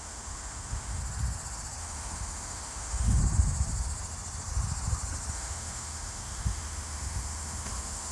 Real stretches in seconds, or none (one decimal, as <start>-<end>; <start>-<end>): 1.0-1.8; 3.2-5.3